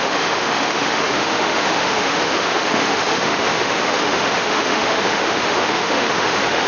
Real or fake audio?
fake